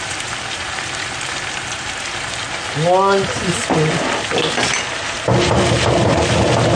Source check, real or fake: real